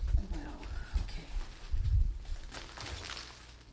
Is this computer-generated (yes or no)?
no